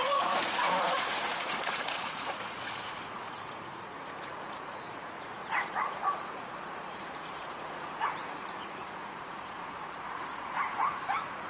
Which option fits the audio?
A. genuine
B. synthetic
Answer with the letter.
B